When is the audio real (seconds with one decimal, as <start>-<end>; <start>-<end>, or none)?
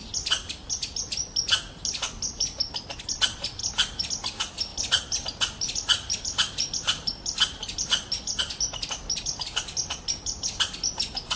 0.7-4.7; 8.4-11.4